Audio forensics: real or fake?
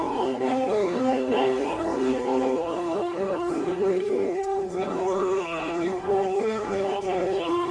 fake